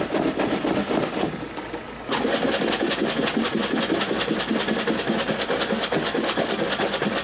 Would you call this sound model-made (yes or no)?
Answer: no